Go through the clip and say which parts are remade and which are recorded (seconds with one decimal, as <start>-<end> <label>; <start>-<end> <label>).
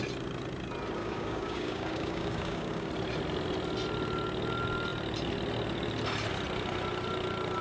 0.0-1.0 recorded; 1.0-2.9 remade; 2.9-7.6 recorded